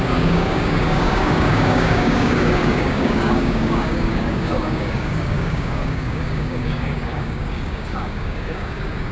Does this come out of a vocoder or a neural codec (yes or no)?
yes